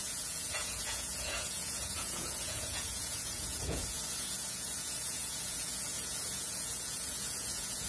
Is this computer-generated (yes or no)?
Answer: yes